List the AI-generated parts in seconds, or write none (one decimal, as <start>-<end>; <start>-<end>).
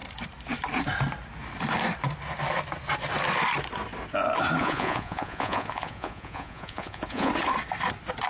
4.6-7.3